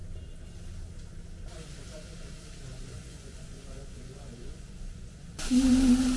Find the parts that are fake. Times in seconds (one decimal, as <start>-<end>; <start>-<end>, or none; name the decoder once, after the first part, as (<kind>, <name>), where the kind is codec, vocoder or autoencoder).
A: 2.7-5.7 (vocoder, Vocos)